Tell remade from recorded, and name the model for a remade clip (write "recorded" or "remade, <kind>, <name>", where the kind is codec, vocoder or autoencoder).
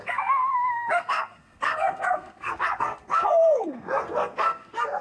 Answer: remade, codec, SNAC